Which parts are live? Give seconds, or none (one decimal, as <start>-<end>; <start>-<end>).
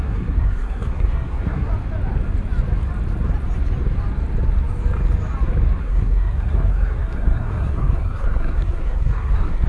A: 1.7-5.8